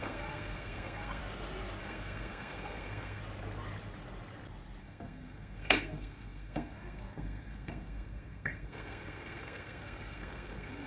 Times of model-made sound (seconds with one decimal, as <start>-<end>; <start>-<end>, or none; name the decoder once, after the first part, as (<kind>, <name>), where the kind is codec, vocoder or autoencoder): 0.0-1.2 (codec, SNAC); 1.8-3.2; 4.8-10.9

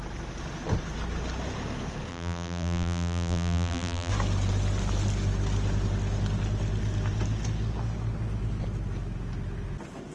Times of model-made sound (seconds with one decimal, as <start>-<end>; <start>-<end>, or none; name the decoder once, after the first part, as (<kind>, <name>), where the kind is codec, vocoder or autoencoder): 2.1-4.1 (vocoder, BigVGAN v2)

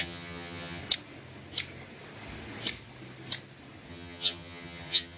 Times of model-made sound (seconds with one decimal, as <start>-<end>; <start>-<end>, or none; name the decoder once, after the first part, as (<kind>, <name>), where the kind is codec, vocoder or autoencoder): 0.0-0.8 (vocoder, HiFi-GAN); 3.9-5.2

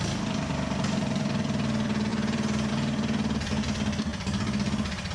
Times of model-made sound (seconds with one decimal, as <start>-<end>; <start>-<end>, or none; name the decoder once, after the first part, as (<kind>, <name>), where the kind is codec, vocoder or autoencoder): 2.1-2.7 (vocoder, BigVGAN v2); 4.1-5.1

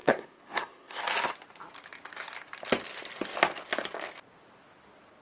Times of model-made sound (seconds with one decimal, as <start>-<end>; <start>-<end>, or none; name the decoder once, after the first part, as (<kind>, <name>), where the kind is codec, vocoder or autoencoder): 0.0-1.0 (codec, SNAC)

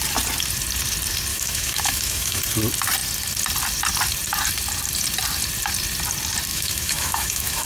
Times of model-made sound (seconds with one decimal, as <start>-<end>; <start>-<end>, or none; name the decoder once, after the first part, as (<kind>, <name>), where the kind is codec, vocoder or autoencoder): 1.3-2.4 (autoencoder, DAC-VAE); 6.5-7.7

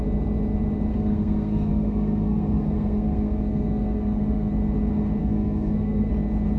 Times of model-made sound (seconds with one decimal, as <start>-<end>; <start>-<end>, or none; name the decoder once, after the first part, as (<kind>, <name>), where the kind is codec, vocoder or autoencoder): 0.9-4.5 (codec, SNAC); 5.2-6.1

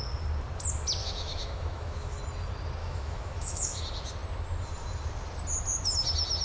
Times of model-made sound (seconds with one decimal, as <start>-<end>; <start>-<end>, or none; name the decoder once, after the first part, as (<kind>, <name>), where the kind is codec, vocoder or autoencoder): 1.0-2.2 (autoencoder, DAC-VAE); 2.8-3.8